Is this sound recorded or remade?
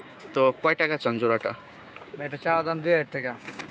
remade